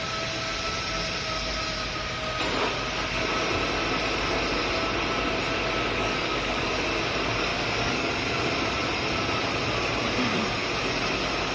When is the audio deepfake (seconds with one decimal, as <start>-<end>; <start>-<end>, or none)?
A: 6.0-6.7; 7.5-8.1

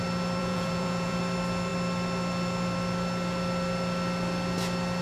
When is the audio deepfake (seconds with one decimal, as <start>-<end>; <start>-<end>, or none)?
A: 0.4-1.2